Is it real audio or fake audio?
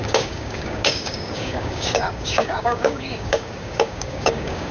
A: fake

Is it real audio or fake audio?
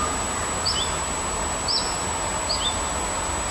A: real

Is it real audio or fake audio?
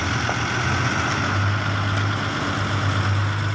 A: real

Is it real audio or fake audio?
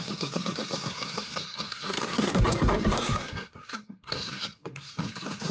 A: fake